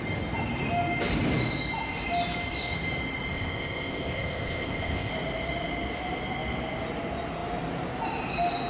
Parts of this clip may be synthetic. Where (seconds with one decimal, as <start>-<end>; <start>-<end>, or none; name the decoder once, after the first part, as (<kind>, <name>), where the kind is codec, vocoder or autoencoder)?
3.3-5.1 (codec, ZipCodec)